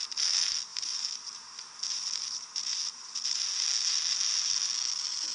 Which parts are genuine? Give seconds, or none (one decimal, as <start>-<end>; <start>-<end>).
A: 0.0-5.3